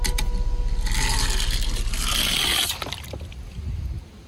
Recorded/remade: recorded